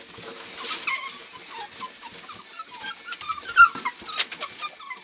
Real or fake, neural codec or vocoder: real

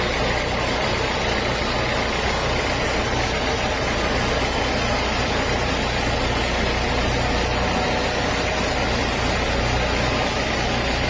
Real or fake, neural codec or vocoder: real